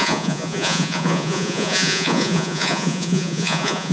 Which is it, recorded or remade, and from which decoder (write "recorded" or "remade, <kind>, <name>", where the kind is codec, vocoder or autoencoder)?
remade, vocoder, Vocos